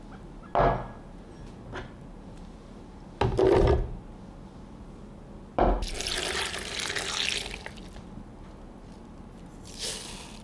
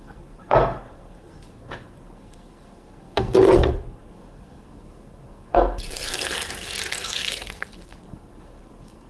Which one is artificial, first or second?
second